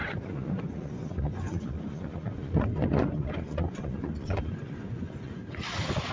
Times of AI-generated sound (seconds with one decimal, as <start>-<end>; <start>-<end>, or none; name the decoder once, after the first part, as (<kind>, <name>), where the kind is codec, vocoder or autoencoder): 0.0-5.4 (vocoder, Vocos)